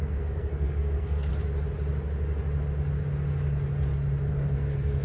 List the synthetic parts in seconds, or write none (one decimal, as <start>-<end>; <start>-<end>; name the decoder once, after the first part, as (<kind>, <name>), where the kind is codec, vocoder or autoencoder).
0.0-1.3 (codec, SNAC); 4.3-5.0